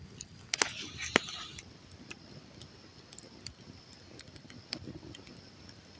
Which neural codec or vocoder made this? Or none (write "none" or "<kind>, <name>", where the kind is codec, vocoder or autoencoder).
none